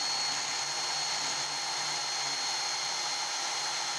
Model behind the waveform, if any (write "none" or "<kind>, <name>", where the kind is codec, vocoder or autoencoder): none